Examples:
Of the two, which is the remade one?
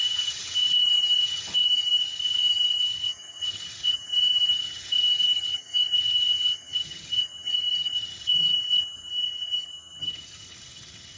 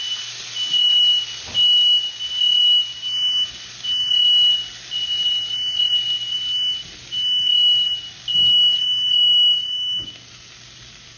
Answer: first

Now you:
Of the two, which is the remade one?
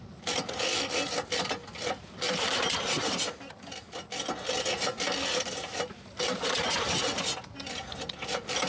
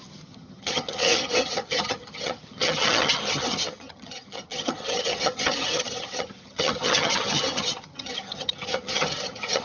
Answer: second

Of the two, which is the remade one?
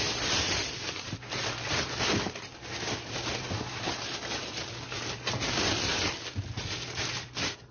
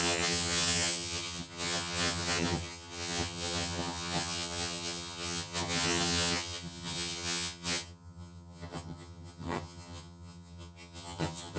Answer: second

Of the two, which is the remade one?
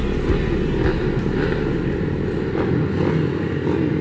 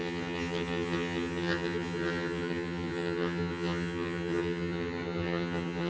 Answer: second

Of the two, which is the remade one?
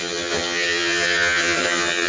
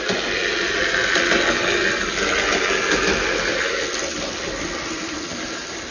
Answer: first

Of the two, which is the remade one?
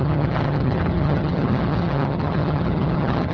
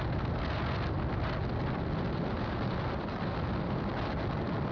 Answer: first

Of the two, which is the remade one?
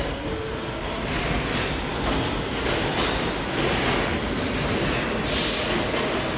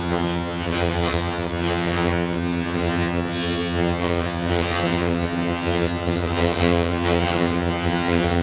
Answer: second